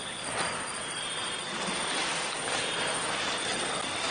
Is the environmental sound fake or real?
real